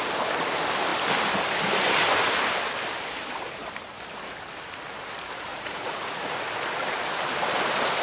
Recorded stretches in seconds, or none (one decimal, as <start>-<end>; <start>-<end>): 0.0-5.5; 6.4-8.0